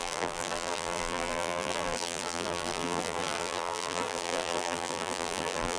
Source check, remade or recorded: remade